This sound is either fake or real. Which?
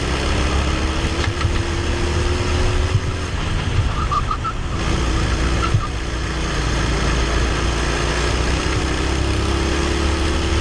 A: real